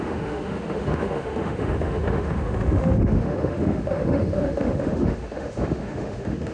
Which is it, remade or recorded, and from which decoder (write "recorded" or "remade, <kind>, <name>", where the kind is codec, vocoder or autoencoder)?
remade, autoencoder, DAC-VAE